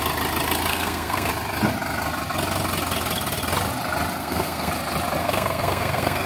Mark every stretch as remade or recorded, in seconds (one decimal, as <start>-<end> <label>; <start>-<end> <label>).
0.0-0.7 recorded; 0.7-1.3 remade; 1.3-4.2 recorded; 4.2-4.7 remade; 4.7-5.2 recorded; 5.2-6.3 remade